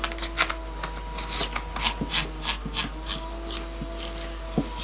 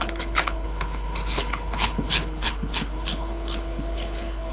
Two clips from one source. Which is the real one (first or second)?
first